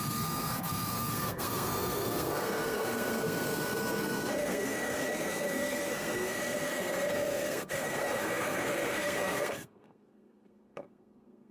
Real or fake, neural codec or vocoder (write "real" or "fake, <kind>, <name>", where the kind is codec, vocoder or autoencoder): fake, codec, SNAC